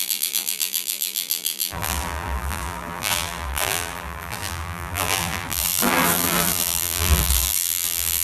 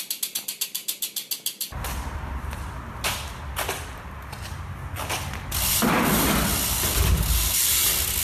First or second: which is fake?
first